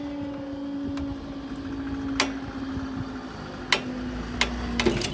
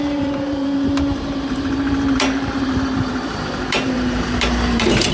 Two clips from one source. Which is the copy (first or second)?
second